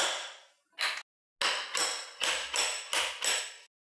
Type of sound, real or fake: real